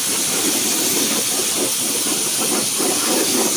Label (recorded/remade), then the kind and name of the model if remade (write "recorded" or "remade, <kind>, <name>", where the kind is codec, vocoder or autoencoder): recorded